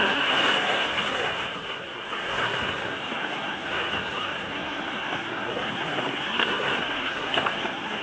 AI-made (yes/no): yes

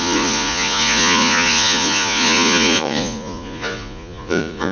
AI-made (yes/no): yes